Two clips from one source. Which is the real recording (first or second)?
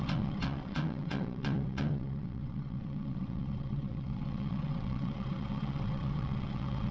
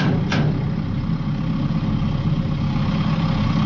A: second